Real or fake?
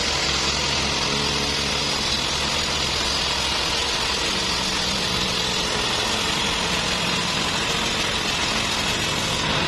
real